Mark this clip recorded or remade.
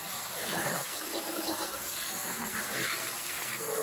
remade